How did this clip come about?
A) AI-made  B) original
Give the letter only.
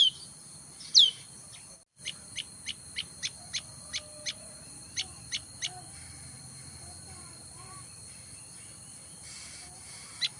B